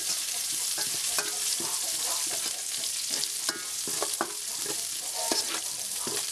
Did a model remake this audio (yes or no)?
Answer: no